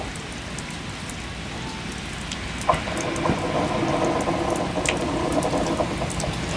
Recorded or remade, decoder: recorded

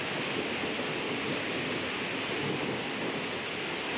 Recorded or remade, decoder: recorded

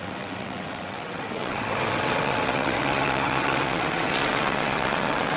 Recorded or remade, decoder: remade, vocoder, WaveNeXt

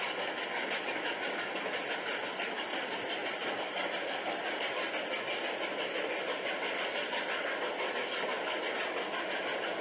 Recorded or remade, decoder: recorded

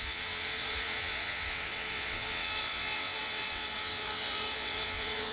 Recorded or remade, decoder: remade, vocoder, WaveNeXt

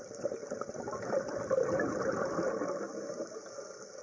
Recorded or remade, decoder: recorded